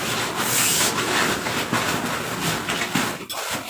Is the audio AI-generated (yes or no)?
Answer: no